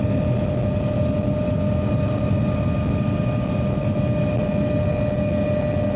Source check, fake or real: real